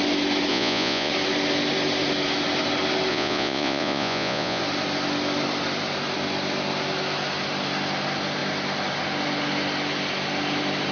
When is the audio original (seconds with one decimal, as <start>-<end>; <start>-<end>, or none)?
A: 0.0-0.5; 1.1-3.1; 4.6-10.9